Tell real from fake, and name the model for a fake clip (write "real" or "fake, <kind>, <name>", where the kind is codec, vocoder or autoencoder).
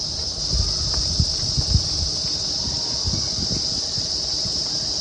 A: real